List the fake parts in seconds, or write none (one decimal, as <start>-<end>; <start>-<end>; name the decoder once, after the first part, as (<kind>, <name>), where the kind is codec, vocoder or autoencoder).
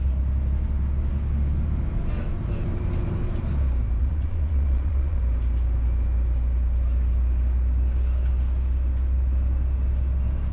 4.0-5.2 (vocoder, Vocos)